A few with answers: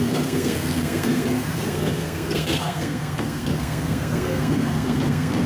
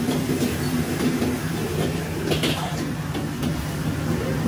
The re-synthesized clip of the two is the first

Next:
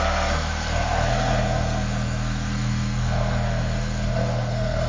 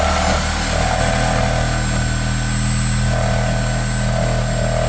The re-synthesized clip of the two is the first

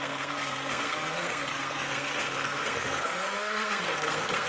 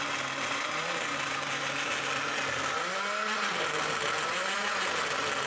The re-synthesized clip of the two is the first